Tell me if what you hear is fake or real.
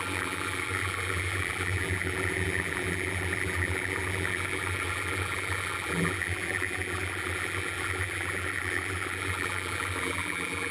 fake